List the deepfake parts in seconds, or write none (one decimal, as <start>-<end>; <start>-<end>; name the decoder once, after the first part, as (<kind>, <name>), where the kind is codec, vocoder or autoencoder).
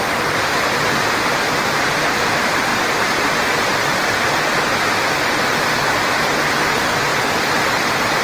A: none